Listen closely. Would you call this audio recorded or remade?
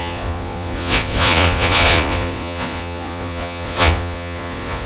remade